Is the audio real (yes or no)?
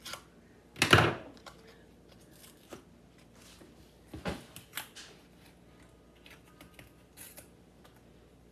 yes